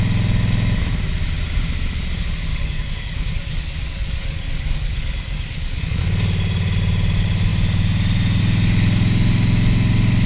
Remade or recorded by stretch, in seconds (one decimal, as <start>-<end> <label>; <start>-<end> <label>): 0.0-2.5 recorded; 2.5-6.0 remade; 6.0-10.3 recorded